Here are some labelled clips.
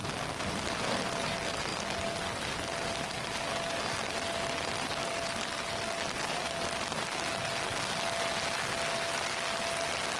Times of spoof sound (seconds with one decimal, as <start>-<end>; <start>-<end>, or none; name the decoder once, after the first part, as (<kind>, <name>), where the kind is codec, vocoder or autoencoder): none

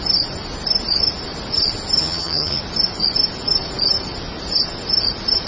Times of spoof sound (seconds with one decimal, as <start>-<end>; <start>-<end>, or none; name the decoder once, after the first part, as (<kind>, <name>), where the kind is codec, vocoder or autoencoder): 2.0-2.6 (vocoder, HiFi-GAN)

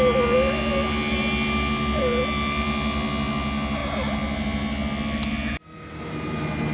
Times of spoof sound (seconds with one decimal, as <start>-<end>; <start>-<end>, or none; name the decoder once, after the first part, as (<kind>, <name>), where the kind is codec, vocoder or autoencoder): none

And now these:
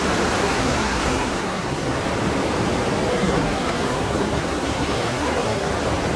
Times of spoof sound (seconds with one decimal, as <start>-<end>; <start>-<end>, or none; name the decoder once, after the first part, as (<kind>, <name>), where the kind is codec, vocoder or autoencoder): 0.4-2.0 (codec, SNAC); 3.1-5.7

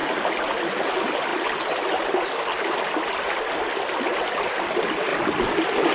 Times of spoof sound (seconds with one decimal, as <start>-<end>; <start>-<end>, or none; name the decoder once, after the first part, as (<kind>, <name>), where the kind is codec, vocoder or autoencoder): none

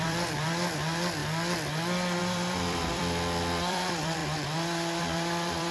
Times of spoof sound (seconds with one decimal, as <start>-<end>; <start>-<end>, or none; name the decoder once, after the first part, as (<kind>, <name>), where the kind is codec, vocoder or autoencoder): 0.0-1.2 (vocoder, BigVGAN v2); 2.2-5.7

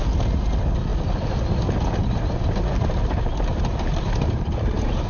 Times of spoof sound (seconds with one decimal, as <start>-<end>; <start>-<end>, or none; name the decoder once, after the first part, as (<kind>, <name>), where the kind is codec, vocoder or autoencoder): none

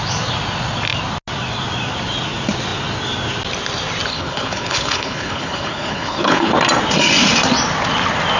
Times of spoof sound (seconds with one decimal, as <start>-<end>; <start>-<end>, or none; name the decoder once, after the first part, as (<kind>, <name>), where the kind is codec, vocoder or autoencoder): 4.1-6.5 (codec, HILCodec)